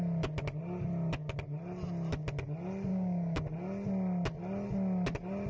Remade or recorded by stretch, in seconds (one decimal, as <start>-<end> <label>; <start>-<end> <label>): 0.0-2.9 recorded; 2.9-3.4 remade; 3.4-5.5 recorded